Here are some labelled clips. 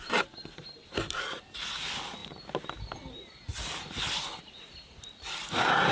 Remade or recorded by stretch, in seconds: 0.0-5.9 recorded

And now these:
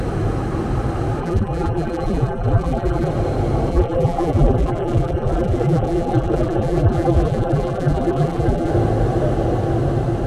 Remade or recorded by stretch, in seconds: 0.0-1.2 recorded; 1.2-3.1 remade; 3.1-3.7 recorded; 3.7-8.7 remade; 8.7-10.3 recorded

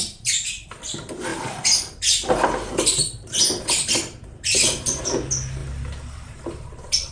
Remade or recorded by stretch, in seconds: 0.0-1.3 recorded; 1.3-5.0 remade; 5.0-7.1 recorded

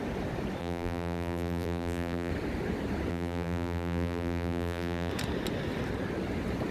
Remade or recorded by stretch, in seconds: 0.0-0.6 recorded; 0.6-2.3 remade; 2.3-3.1 recorded; 3.1-5.1 remade; 5.1-6.7 recorded

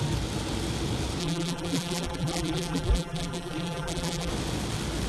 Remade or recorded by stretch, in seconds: 0.0-1.2 recorded; 1.2-4.3 remade; 4.3-5.1 recorded